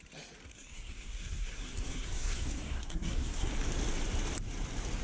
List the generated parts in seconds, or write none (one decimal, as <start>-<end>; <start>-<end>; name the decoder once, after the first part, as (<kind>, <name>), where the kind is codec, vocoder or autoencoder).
0.5-3.5 (codec, SNAC)